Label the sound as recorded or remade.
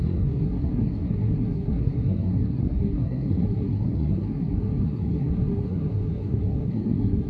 remade